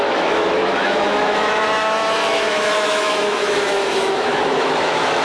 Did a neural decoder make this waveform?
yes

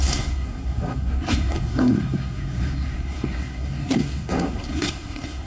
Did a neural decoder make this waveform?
yes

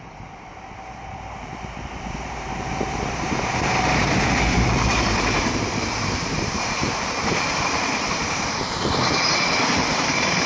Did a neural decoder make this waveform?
yes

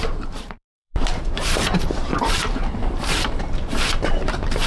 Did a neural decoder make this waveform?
yes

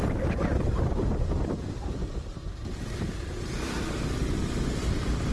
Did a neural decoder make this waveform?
no